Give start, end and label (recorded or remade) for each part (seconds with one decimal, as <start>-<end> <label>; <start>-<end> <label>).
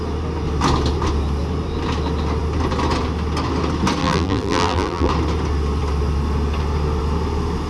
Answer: 0.0-4.0 recorded; 4.0-5.1 remade; 5.1-7.7 recorded